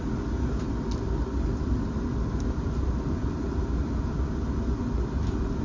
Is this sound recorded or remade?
recorded